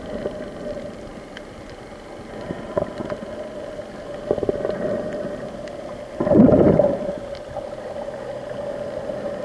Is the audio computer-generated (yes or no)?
no